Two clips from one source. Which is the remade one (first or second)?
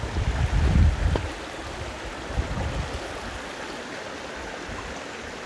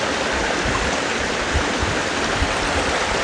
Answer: second